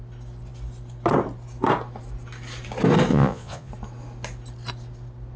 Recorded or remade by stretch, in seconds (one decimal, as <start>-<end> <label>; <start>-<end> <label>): 0.0-3.1 recorded; 3.1-3.7 remade; 3.7-5.4 recorded